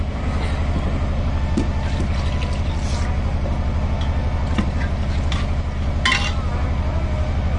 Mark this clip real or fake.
real